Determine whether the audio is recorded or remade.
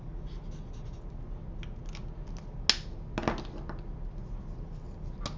recorded